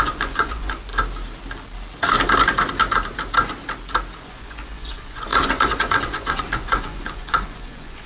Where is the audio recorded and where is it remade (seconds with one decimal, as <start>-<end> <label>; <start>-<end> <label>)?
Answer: 0.0-0.9 remade; 0.9-4.2 recorded; 4.2-8.1 remade